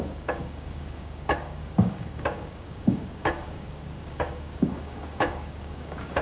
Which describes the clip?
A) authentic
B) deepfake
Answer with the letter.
B